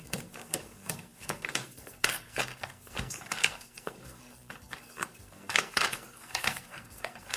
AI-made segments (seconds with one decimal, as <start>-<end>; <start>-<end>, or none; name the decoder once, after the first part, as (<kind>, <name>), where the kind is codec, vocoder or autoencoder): 0.0-7.4 (codec, SNAC)